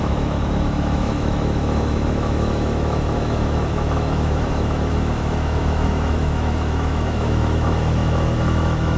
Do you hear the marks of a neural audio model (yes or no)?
yes